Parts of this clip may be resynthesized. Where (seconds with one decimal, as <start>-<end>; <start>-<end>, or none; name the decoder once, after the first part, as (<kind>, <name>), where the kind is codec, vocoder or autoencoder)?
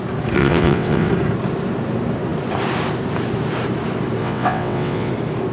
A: 0.4-1.1 (vocoder, WaveNeXt); 4.2-5.1